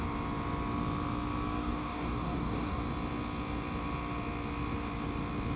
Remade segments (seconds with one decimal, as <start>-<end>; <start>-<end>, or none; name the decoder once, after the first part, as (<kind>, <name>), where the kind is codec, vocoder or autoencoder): 1.6-2.8 (codec, DAC)